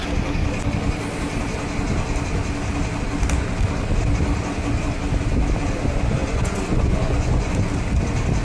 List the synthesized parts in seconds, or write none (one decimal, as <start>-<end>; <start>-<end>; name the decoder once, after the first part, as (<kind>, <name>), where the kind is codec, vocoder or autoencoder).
6.2-7.5 (vocoder, Vocos)